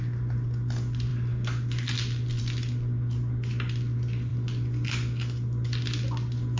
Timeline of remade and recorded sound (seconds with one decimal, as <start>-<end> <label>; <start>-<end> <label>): 0.0-6.6 recorded

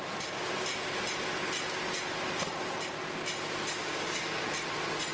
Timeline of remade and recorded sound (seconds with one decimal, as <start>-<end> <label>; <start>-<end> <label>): 0.0-3.8 recorded; 3.8-4.4 remade; 4.4-5.1 recorded